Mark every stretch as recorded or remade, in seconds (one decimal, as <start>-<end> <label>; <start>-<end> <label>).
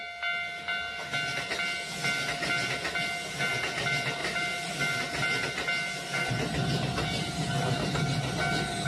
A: 0.0-4.2 recorded; 4.2-5.0 remade; 5.0-8.9 recorded